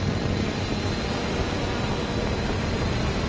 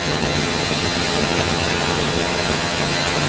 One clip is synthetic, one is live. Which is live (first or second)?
first